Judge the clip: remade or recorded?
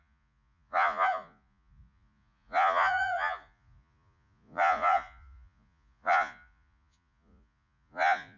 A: remade